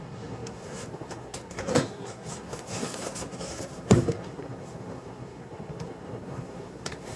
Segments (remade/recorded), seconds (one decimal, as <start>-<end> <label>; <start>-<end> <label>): 0.0-7.2 remade

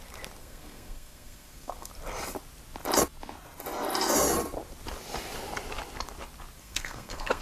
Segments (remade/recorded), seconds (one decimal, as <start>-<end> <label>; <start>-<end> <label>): 0.0-0.4 recorded; 0.4-1.9 remade; 1.9-6.6 recorded; 6.6-7.4 remade

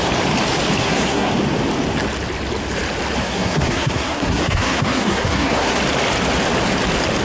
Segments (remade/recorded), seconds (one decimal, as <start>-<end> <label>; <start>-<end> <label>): 0.0-0.8 recorded; 0.8-1.3 remade; 1.3-3.2 recorded; 3.2-5.8 remade; 5.8-7.2 recorded

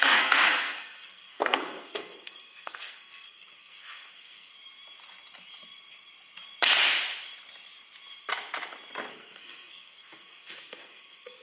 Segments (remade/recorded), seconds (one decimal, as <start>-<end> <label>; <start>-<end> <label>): 0.0-4.5 remade; 4.5-9.1 recorded; 9.1-11.4 remade

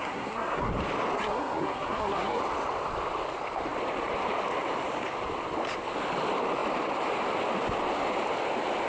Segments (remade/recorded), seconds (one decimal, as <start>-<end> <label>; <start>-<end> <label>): 0.0-0.7 remade; 0.7-1.2 recorded; 1.2-2.4 remade; 2.4-8.9 recorded

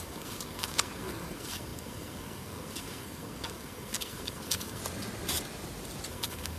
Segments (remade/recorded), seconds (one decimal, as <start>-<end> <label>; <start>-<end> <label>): 0.0-4.8 remade; 4.8-6.1 recorded; 6.1-6.6 remade

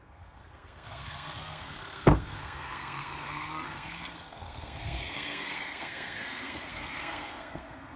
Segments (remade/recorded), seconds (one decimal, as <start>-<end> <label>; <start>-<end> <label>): 0.0-8.0 remade

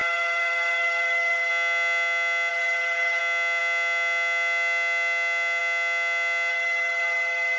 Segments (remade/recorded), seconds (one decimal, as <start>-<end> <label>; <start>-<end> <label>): 0.0-1.5 remade; 1.5-2.5 recorded; 2.5-3.2 remade; 3.2-6.5 recorded; 6.5-7.6 remade